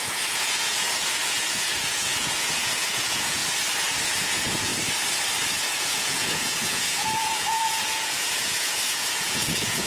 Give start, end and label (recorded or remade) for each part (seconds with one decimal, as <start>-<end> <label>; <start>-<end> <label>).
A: 0.0-3.4 remade; 3.4-4.0 recorded; 4.0-4.7 remade; 4.7-5.5 recorded; 5.5-9.9 remade